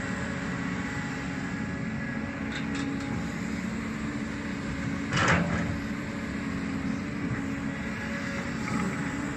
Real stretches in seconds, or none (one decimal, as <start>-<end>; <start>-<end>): 0.0-9.4